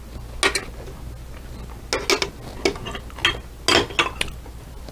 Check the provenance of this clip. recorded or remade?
recorded